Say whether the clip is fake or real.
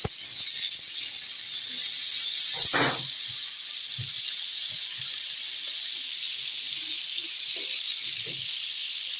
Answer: real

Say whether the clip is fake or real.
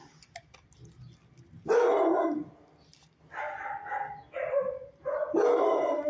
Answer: real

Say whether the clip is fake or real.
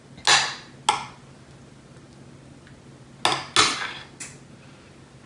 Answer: real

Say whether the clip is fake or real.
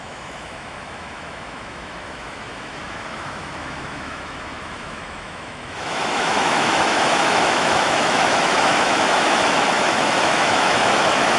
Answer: fake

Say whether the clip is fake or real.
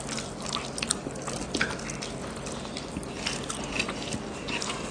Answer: real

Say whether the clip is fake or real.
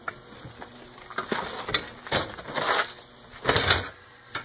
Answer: real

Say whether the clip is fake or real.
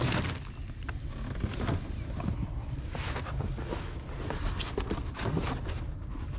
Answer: real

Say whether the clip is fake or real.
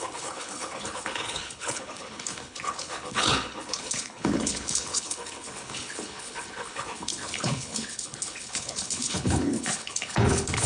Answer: fake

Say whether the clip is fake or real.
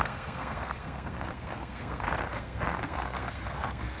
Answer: fake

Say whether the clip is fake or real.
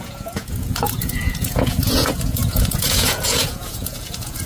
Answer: fake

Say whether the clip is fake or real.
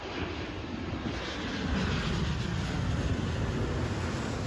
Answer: real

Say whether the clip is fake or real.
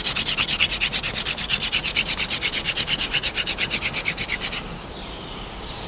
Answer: real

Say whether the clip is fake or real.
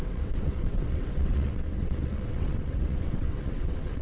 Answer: fake